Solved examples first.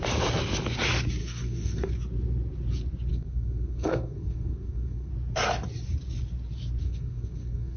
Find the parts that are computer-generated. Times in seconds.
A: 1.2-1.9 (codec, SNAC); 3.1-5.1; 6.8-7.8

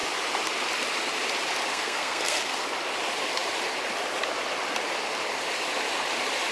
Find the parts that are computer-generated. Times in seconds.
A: 1.7-2.4 (codec, SNAC)